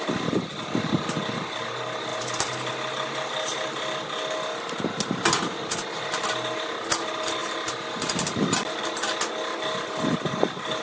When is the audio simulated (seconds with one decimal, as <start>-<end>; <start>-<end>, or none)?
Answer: none